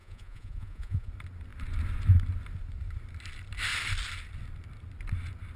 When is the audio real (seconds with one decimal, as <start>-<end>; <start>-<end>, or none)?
1.1-5.6